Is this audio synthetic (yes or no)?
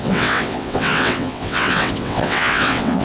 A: yes